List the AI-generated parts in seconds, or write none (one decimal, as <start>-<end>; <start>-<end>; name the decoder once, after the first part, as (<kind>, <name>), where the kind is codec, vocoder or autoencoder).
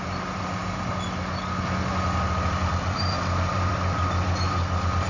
2.6-4.0 (vocoder, BigVGAN v2)